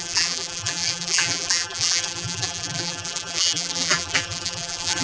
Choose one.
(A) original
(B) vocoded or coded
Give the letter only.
B